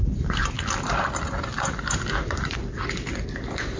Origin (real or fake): fake